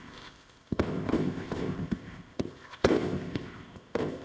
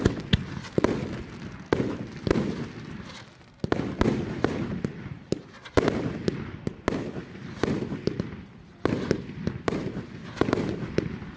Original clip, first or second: second